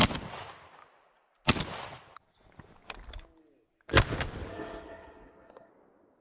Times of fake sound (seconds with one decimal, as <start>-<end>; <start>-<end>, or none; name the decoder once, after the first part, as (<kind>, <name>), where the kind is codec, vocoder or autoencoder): 4.5-5.7 (codec, SNAC)